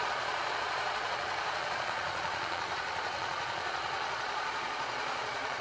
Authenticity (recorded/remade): remade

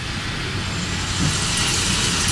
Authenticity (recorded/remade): recorded